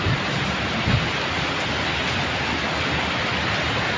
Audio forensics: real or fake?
real